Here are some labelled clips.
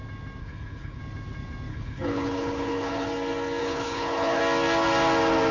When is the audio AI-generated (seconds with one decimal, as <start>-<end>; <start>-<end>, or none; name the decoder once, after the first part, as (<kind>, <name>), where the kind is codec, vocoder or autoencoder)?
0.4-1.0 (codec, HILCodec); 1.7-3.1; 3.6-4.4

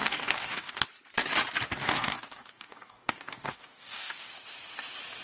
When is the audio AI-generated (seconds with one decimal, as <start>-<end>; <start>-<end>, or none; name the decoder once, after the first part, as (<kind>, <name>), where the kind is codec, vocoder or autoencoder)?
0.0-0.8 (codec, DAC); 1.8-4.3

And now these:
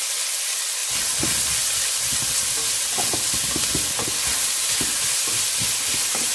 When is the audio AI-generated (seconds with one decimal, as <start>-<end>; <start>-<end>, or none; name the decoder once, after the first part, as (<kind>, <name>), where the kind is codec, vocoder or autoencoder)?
none